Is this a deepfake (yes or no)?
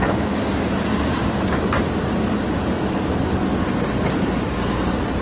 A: no